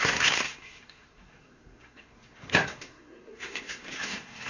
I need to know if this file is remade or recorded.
remade